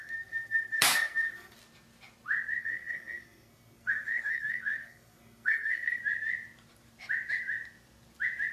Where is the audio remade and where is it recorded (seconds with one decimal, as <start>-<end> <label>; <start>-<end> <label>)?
0.0-1.6 remade; 1.6-2.6 recorded; 2.6-6.0 remade; 6.0-8.5 recorded